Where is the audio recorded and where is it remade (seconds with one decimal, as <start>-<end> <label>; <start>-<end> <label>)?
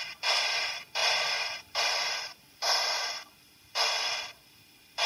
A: 0.0-5.1 recorded